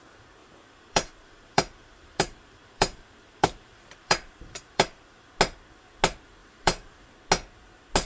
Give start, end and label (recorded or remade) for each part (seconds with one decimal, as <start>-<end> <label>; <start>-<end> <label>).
0.0-0.4 recorded; 0.4-5.0 remade; 5.0-6.4 recorded; 6.4-7.1 remade; 7.1-8.1 recorded